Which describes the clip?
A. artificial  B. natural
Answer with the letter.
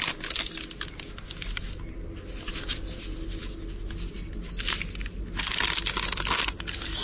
B